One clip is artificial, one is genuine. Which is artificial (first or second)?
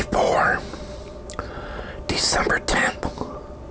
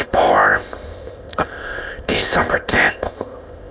second